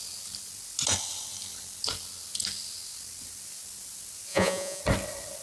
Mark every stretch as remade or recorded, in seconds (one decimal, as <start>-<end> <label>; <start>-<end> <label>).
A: 0.0-4.3 recorded; 4.3-4.8 remade; 4.8-5.4 recorded